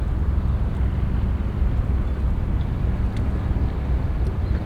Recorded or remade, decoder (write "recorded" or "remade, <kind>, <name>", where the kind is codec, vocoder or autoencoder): recorded